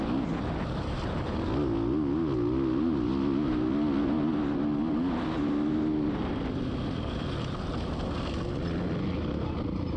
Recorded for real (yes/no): yes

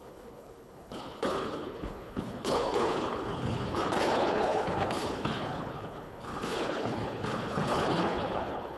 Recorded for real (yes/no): no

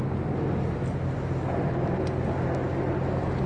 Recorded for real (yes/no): yes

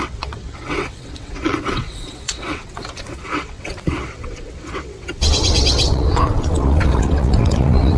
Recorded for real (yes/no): no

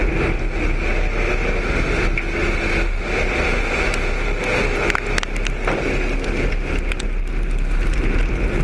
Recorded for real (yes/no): yes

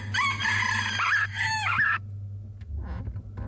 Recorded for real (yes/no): yes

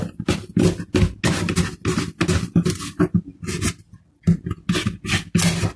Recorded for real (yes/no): yes